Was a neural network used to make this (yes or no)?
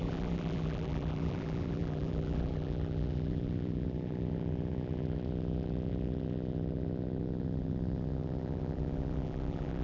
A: yes